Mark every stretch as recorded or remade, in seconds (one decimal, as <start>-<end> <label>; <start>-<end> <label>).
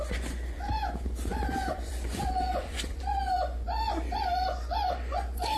0.0-5.6 remade